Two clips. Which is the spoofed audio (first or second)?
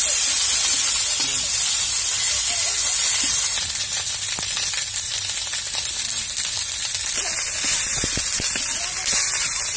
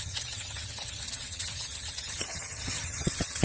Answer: second